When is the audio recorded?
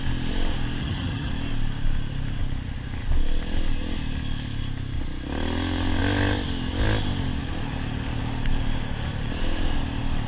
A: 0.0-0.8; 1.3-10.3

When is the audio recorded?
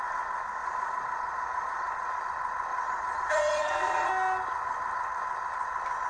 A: 0.0-0.6; 2.2-2.7; 4.1-6.1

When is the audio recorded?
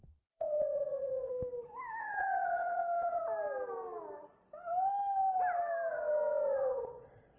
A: 1.3-2.0; 3.2-5.9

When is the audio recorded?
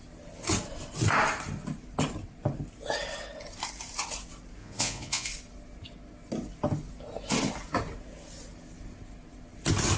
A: 0.0-4.6; 5.3-10.0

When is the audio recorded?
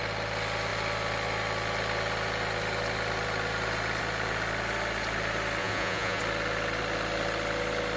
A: 0.0-5.6; 6.2-8.0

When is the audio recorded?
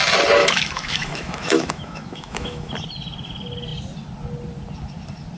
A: 0.0-0.4; 2.7-5.4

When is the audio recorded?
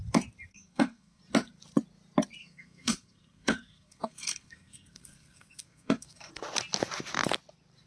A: 0.0-0.5; 1.2-2.4; 6.3-7.9